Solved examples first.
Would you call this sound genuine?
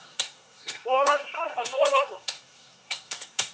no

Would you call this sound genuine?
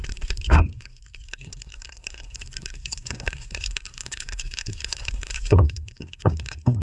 no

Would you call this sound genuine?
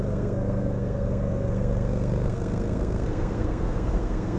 no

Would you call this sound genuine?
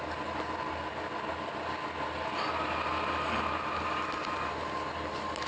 yes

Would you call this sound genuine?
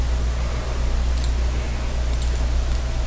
yes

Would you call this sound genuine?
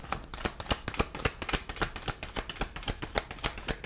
yes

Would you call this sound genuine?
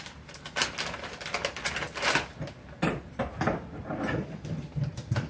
yes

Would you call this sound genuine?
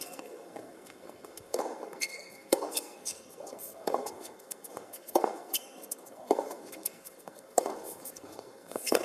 no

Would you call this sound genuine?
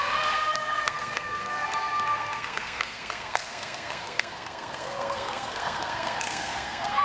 no